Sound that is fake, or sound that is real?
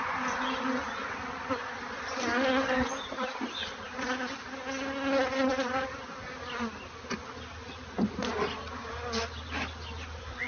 real